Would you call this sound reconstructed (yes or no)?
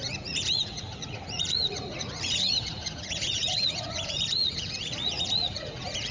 yes